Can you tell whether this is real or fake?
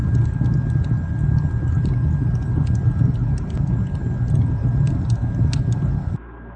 real